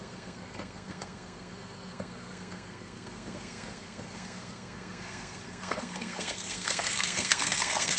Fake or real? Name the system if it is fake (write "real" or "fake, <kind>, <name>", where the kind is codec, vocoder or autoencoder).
fake, codec, SNAC